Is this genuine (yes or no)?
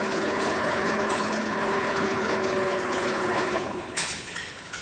no